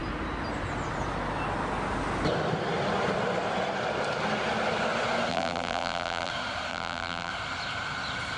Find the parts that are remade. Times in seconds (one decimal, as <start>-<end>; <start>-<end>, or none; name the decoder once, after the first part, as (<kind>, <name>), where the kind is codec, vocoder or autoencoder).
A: 5.3-6.3 (vocoder, BigVGAN v2); 6.7-7.3